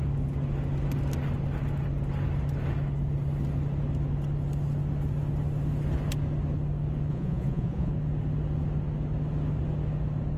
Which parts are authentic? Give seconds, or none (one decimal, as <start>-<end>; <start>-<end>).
0.0-7.1; 7.9-10.4